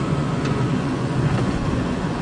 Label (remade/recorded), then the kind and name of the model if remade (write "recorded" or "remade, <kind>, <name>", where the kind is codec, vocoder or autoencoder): remade, vocoder, Vocos